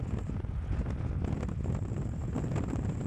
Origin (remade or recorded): recorded